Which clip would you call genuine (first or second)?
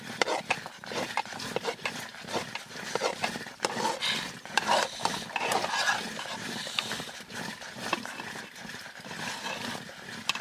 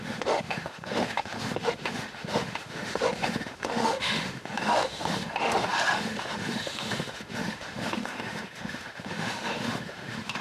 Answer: first